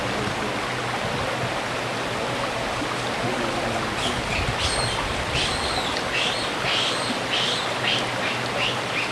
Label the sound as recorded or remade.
recorded